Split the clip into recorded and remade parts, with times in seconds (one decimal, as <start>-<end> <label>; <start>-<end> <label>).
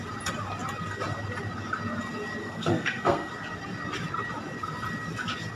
0.0-2.4 recorded; 2.4-3.3 remade; 3.3-5.6 recorded